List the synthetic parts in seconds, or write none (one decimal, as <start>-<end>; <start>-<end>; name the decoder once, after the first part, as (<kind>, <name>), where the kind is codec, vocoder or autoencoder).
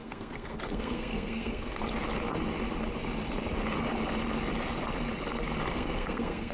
0.0-1.8 (codec, SNAC); 5.7-6.5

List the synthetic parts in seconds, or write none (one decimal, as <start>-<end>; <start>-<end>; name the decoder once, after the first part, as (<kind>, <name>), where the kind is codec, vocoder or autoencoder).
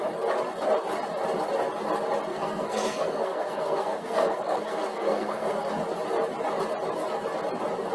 2.3-5.7 (codec, SNAC)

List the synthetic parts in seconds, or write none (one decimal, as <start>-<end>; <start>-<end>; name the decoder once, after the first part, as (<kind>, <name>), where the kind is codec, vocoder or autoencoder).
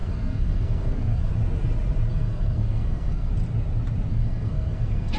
0.0-1.3 (codec, SNAC); 2.1-3.3; 4.1-5.2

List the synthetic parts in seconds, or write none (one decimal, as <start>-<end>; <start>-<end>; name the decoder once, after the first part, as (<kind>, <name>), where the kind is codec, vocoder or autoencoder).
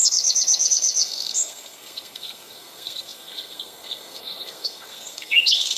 0.0-5.8 (codec, SNAC)